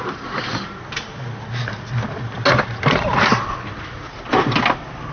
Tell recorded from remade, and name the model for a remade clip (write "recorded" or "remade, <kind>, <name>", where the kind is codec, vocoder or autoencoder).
recorded